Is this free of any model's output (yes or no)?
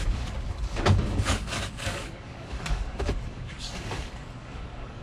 no